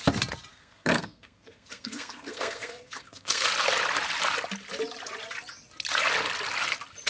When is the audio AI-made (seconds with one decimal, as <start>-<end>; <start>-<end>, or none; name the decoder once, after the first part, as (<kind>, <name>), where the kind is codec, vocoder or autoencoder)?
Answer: 0.5-3.5 (codec, SNAC)